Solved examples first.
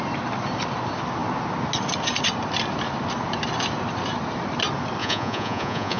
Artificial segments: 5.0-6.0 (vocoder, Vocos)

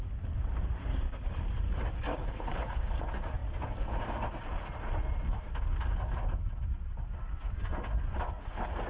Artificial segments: 2.1-2.8 (codec, HILCodec)

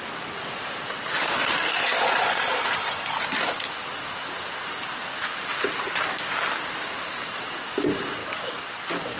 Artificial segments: 1.8-2.9 (vocoder, Vocos)

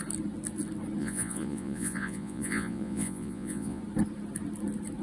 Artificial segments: 1.0-3.8 (vocoder, Vocos)